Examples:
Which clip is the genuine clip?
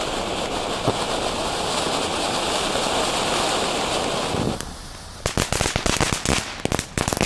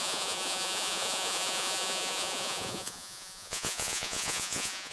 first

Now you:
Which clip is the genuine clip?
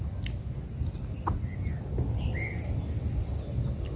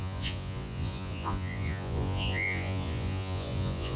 first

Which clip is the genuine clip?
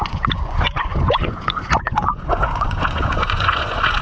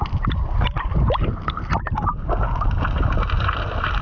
second